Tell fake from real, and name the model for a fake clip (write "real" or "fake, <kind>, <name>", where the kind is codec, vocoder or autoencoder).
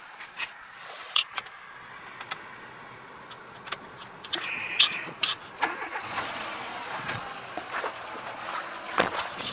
fake, vocoder, Vocos